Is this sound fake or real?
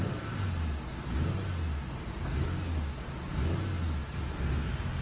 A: real